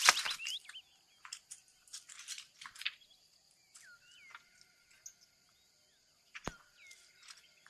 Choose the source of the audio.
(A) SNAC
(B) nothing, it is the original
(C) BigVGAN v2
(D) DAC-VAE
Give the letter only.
B